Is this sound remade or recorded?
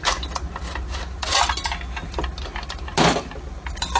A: recorded